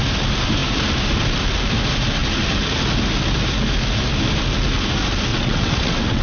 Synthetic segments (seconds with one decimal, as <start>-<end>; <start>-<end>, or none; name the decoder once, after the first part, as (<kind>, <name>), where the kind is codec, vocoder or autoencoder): 5.3-6.2 (vocoder, WaveNeXt)